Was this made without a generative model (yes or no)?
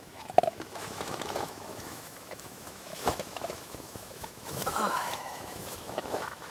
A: no